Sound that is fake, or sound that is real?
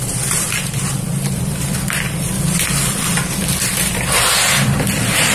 fake